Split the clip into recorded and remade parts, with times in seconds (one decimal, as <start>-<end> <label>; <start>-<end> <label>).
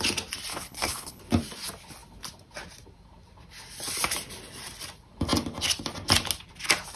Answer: 0.0-0.5 recorded; 0.5-1.2 remade; 1.2-7.0 recorded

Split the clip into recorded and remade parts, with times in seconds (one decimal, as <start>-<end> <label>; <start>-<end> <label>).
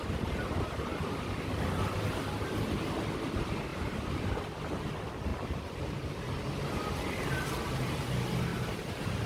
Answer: 0.0-3.7 recorded; 3.7-4.8 remade; 4.8-5.3 recorded; 5.3-6.2 remade; 6.2-8.5 recorded; 8.5-9.3 remade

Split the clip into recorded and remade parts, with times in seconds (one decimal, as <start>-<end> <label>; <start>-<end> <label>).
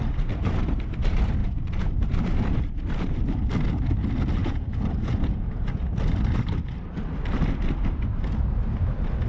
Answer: 0.0-1.4 recorded; 1.4-1.9 remade; 1.9-4.4 recorded; 4.4-5.6 remade; 5.6-9.3 recorded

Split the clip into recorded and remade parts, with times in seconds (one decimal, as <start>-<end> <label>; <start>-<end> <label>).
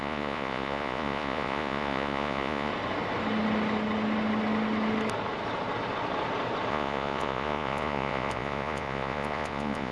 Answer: 0.0-2.7 remade; 2.7-6.7 recorded; 6.7-9.9 remade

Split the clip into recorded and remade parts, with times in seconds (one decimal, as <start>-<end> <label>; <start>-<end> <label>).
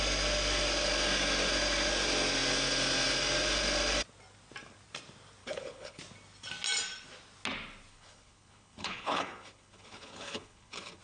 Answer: 0.0-5.4 recorded; 5.4-6.0 remade; 6.0-7.9 recorded; 7.9-11.0 remade